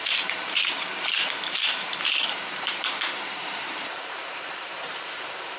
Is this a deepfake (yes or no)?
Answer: yes